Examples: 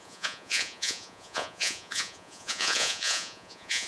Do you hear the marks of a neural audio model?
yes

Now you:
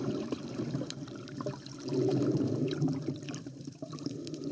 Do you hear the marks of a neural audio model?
yes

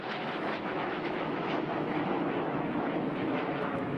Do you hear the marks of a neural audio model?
yes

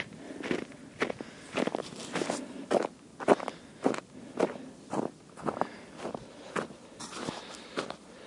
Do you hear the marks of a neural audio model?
no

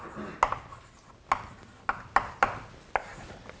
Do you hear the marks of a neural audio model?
no